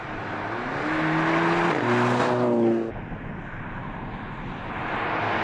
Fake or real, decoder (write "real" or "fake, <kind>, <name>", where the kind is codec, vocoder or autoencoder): real